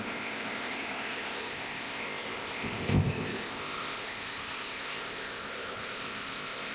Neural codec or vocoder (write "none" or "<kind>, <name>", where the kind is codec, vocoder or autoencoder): codec, ZipCodec